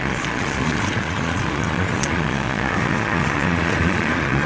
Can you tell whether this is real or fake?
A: fake